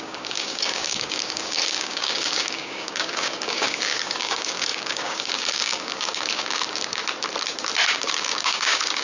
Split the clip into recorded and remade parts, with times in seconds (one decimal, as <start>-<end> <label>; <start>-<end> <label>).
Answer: 0.0-7.0 remade; 7.0-7.9 recorded; 7.9-9.0 remade